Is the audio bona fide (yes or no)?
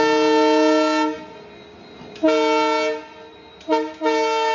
yes